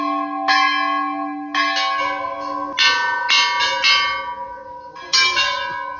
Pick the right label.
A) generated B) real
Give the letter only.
B